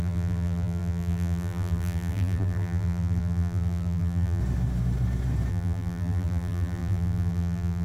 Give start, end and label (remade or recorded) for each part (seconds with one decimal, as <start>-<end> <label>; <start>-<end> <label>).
0.0-4.4 remade; 4.4-5.5 recorded; 5.5-7.8 remade